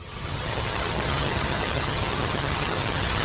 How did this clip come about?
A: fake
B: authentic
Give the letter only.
A